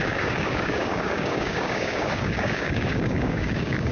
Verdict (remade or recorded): remade